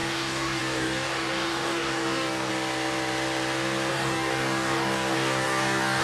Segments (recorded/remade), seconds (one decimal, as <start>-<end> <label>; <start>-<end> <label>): 0.0-2.5 remade; 2.5-3.9 recorded; 3.9-6.0 remade